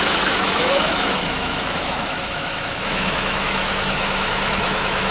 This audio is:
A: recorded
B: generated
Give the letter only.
B